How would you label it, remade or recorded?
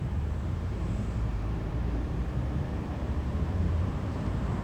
remade